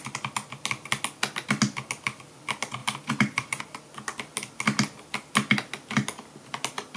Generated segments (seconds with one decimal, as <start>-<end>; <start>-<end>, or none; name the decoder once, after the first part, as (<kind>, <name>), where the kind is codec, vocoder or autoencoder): 2.8-3.6 (vocoder, BigVGAN v2)